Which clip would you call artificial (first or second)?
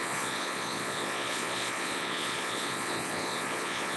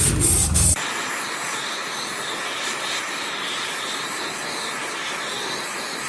first